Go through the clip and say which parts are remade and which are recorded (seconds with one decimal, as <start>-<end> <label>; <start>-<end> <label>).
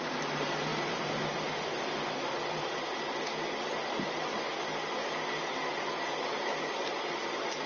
0.0-7.7 recorded